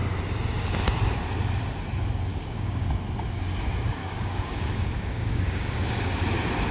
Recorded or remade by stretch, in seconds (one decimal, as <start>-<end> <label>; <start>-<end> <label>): 0.0-2.3 recorded; 2.3-2.9 remade; 2.9-4.0 recorded; 4.0-6.2 remade; 6.2-6.7 recorded